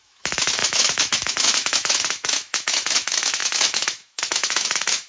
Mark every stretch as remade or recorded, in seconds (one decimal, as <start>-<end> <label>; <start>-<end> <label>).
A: 0.0-5.1 remade